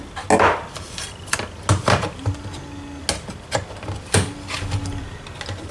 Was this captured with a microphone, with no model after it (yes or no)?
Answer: yes